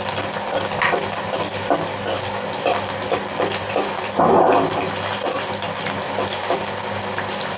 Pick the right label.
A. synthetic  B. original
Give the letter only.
B